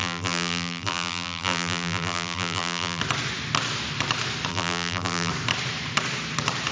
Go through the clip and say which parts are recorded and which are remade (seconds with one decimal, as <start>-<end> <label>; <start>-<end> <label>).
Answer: 0.0-3.0 remade; 3.0-4.5 recorded; 4.5-5.3 remade; 5.3-6.7 recorded